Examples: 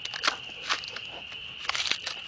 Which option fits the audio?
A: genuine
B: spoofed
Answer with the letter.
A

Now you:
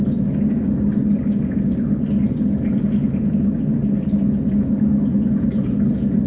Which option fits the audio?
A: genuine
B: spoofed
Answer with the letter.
A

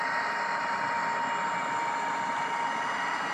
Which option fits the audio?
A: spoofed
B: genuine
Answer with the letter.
B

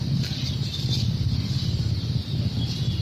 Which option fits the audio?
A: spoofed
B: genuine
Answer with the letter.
B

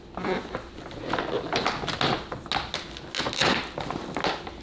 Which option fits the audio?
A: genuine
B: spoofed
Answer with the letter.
A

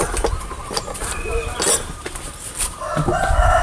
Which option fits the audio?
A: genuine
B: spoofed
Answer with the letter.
A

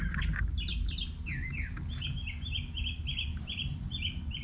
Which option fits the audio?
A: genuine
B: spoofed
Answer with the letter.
A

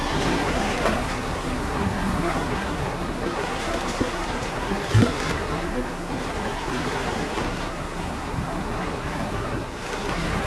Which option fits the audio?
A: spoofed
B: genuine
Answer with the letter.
A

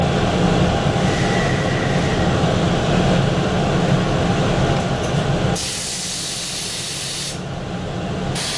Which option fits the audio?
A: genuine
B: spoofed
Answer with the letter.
A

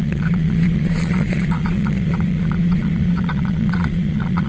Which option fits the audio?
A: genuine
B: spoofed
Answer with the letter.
B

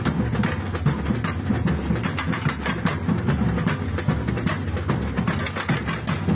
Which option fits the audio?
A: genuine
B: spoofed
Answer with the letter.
A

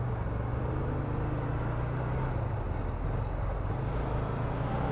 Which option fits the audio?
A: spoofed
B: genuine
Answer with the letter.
B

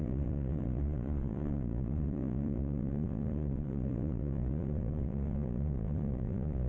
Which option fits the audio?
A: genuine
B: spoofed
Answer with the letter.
B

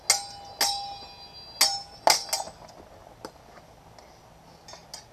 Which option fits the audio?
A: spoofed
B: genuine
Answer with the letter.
B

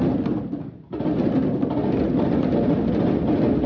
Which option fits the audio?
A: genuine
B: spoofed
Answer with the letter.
A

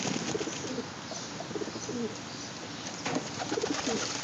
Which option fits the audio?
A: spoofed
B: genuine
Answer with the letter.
B